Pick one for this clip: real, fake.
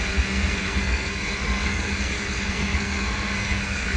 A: fake